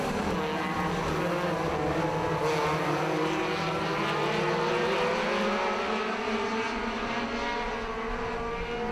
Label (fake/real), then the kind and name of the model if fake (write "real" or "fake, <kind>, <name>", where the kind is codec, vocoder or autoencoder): real